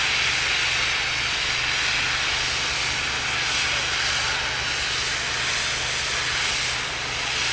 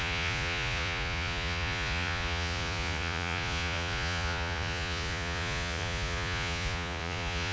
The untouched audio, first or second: first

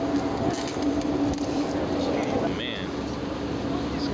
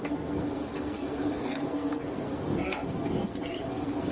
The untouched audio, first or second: first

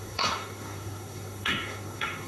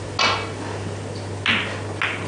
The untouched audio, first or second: second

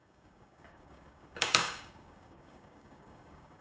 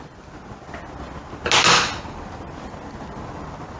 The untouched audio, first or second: second